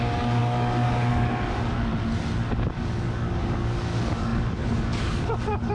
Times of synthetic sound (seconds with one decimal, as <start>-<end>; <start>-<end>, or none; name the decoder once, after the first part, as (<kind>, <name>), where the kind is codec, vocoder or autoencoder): 0.0-1.9 (codec, DAC); 2.5-5.7